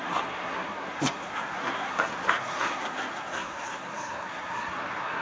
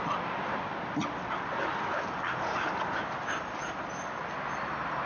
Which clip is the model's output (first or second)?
first